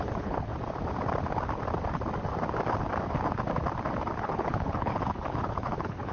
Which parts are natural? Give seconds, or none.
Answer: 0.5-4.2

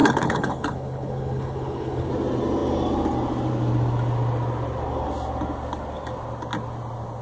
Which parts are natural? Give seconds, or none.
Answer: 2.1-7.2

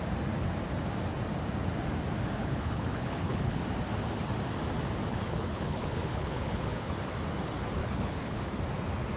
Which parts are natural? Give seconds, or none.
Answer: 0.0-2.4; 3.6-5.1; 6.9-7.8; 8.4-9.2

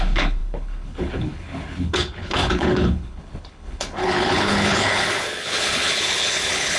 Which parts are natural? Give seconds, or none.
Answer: none

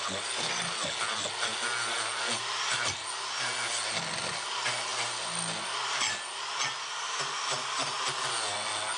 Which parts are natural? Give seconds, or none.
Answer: 0.0-9.0

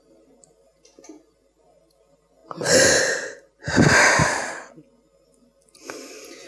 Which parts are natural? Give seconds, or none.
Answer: 0.0-6.5

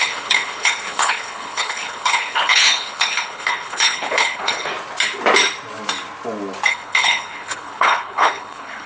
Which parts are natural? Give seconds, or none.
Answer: 4.7-6.7